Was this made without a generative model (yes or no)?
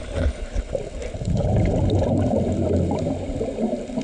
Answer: yes